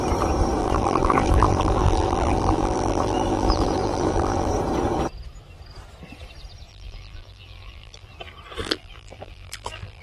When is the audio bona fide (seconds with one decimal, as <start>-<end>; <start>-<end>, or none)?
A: 0.0-0.6; 4.5-6.7; 8.1-8.6